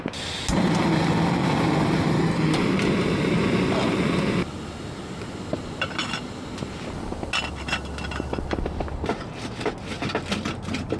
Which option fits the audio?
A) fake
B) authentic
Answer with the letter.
B